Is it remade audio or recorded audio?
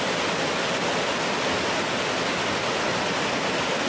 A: recorded